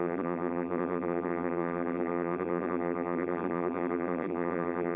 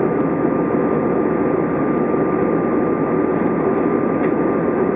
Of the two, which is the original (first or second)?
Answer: second